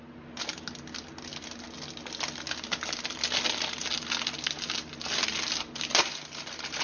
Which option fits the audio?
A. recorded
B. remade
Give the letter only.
A